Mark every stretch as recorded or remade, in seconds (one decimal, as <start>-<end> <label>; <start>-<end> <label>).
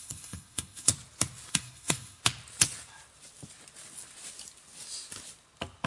0.0-0.9 remade; 0.9-1.5 recorded; 1.5-2.2 remade; 2.2-5.9 recorded